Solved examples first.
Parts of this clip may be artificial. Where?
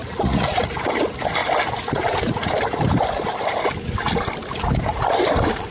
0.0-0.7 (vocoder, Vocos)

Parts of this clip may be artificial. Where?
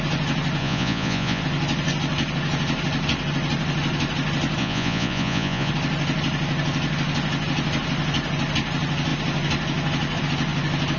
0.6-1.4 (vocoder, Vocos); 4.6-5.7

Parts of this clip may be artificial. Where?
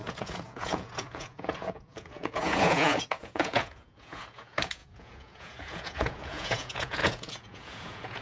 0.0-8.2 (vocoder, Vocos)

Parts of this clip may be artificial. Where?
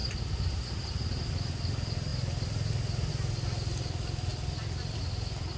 none